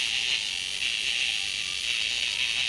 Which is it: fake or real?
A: real